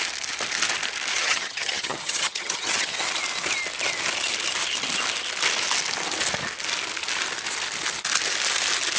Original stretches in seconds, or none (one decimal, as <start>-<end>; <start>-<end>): 0.0-1.1; 3.1-9.0